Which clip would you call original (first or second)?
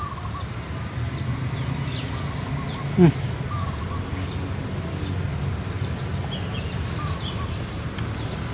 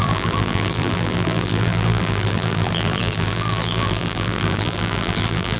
first